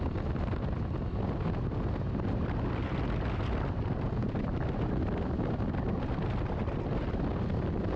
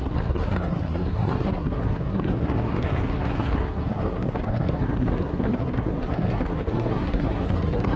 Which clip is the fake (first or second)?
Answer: second